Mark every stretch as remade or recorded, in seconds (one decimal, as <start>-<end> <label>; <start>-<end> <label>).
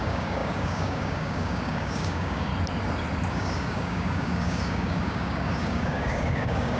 0.0-2.5 remade; 2.5-3.3 recorded; 3.3-6.8 remade